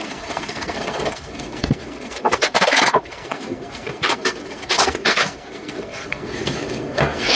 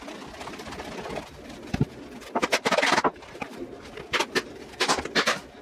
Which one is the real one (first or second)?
second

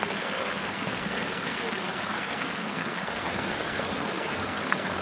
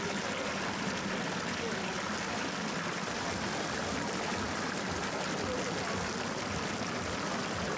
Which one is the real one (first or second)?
second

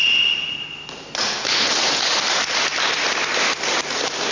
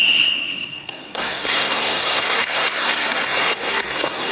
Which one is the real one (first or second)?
first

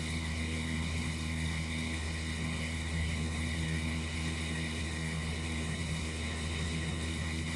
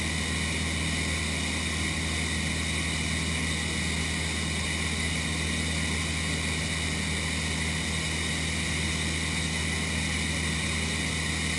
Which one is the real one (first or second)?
second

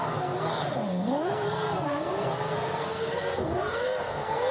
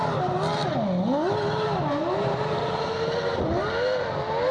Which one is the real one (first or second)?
second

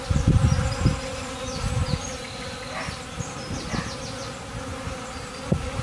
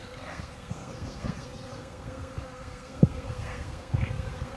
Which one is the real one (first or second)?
first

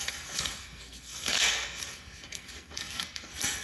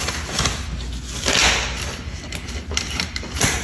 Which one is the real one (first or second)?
second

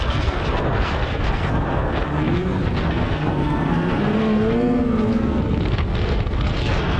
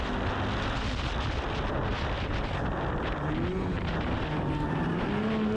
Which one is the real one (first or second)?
second